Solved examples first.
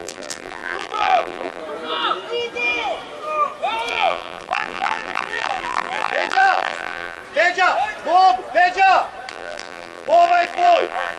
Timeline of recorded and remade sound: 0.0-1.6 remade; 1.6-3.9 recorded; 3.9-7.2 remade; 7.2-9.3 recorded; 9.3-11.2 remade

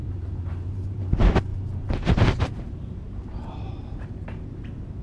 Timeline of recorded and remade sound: 0.0-1.0 remade; 1.0-1.5 recorded; 1.5-4.5 remade; 4.5-5.0 recorded

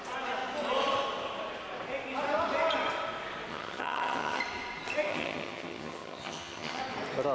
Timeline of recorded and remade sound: 0.0-3.5 recorded; 3.5-4.4 remade; 4.4-5.1 recorded; 5.1-6.8 remade; 6.8-7.3 recorded

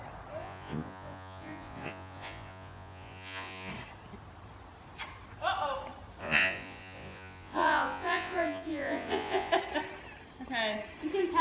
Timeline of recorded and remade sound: 0.0-0.4 recorded; 0.4-3.7 remade; 3.7-6.2 recorded; 6.2-9.5 remade; 9.5-11.4 recorded

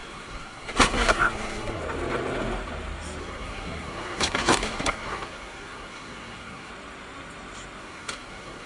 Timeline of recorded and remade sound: 0.0-1.8 remade; 1.8-3.2 recorded; 3.2-6.7 remade; 6.7-7.8 recorded; 7.8-8.7 remade